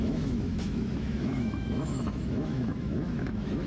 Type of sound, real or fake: fake